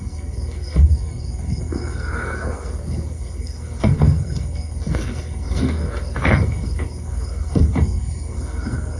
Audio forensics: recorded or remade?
remade